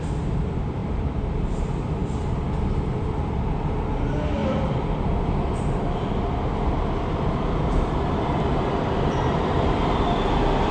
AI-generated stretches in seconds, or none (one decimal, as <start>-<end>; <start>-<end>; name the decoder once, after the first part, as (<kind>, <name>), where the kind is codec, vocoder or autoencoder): 0.8-1.5 (vocoder, BigVGAN v2); 4.4-6.1; 7.1-10.7